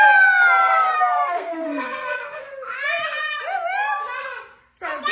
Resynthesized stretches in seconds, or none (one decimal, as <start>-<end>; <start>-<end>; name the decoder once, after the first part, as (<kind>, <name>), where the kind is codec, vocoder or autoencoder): 0.6-2.4 (codec, SNAC)